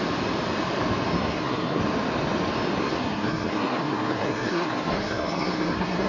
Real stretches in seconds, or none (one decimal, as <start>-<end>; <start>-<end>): 0.0-1.2; 1.8-2.8